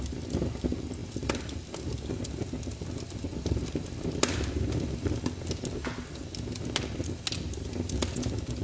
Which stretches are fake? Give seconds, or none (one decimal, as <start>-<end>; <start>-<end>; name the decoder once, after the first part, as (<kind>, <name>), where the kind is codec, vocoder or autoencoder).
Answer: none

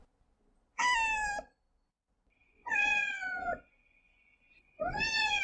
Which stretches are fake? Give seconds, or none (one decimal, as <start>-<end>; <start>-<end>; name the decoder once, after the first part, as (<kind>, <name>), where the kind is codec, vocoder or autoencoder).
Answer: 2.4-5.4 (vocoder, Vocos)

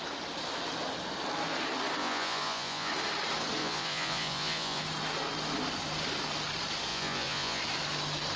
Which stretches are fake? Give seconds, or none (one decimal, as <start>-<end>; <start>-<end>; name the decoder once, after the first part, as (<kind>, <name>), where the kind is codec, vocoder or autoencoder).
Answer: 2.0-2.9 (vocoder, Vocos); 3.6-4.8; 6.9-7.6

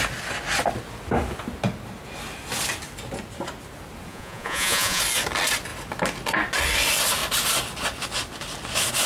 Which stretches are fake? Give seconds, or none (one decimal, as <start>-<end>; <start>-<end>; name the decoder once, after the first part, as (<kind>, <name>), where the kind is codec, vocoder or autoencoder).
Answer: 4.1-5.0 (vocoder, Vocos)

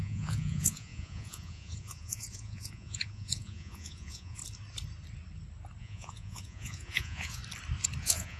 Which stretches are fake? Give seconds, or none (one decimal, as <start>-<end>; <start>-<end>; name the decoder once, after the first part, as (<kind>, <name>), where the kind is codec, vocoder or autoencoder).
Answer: 0.0-4.4 (vocoder, Vocos); 5.8-7.4; 8.0-8.4